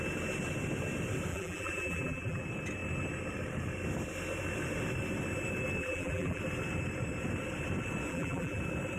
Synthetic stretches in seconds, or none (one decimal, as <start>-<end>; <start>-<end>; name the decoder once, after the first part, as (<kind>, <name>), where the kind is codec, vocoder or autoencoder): 1.3-2.4 (vocoder, BigVGAN v2); 5.8-6.4; 8.1-8.6